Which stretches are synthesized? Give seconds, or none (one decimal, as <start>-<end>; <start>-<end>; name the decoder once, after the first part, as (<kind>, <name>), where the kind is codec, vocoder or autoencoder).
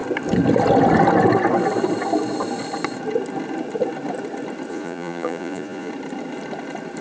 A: 4.7-5.9 (vocoder, Vocos)